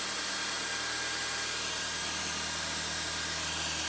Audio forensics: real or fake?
real